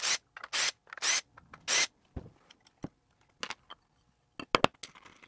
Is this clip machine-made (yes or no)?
no